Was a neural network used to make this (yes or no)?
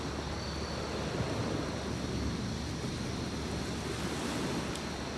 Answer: no